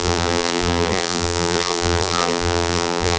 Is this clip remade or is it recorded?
remade